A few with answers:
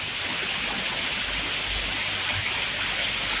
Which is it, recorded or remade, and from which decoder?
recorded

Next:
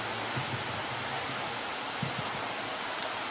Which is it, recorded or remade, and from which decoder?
recorded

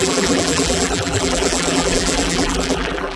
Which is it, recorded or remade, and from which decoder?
remade, vocoder, BigVGAN v2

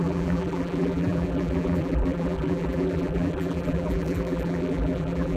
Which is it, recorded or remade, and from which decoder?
remade, vocoder, BigVGAN v2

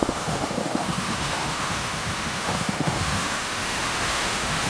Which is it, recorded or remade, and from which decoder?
remade, autoencoder, DAC-VAE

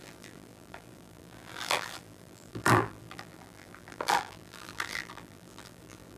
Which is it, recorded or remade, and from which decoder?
remade, vocoder, BigVGAN v2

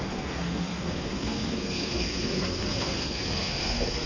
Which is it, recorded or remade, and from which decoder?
remade, codec, SNAC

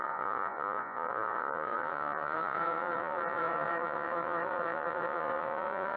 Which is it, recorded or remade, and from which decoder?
remade, vocoder, Vocos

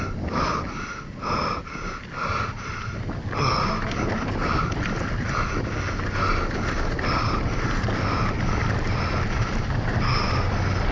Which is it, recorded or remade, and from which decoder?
recorded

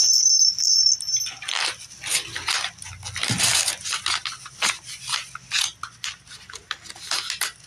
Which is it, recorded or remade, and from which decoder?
recorded